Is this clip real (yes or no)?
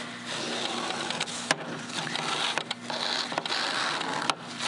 yes